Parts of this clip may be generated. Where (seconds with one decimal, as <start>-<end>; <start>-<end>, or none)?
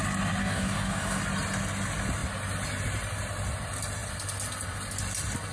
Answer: 0.4-1.2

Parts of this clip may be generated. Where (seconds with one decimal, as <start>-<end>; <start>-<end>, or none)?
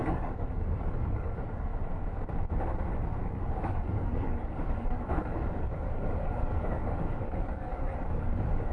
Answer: 0.0-1.7; 3.2-8.7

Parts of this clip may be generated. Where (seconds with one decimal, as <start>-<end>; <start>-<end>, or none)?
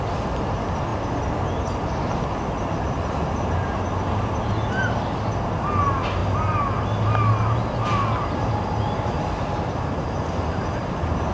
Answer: none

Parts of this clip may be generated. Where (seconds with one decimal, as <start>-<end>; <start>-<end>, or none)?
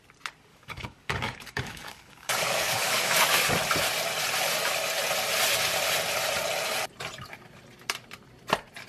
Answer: 0.5-3.5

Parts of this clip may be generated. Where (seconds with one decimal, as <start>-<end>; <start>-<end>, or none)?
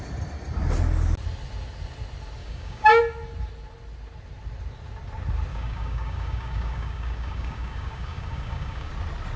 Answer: 2.4-3.0; 5.5-8.9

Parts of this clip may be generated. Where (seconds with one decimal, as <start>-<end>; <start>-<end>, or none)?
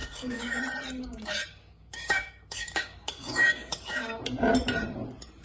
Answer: 0.0-0.6; 1.0-4.2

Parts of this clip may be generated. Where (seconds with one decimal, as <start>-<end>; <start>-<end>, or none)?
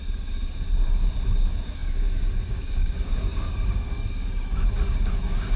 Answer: 0.0-5.6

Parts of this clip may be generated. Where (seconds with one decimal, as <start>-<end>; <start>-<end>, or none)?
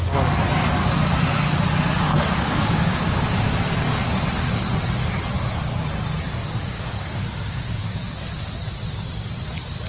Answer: 2.1-3.6; 6.4-8.2